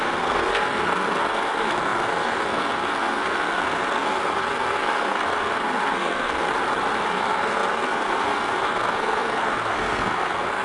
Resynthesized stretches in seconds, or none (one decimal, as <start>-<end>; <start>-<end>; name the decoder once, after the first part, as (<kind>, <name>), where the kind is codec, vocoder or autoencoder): 0.0-6.5 (codec, SNAC); 7.1-10.6